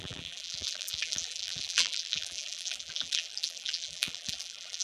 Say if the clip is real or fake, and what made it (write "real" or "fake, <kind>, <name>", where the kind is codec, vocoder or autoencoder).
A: fake, vocoder, BigVGAN v2